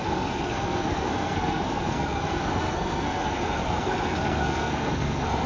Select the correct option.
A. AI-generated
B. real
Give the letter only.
A